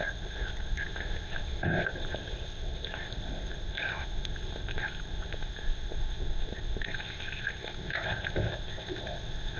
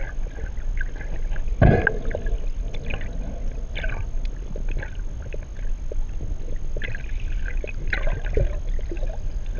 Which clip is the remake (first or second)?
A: first